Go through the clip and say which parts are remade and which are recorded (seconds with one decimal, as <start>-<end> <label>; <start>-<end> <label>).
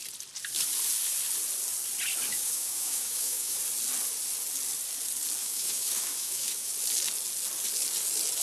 0.0-2.3 recorded; 2.3-3.6 remade; 3.6-5.4 recorded; 5.4-6.7 remade; 6.7-8.4 recorded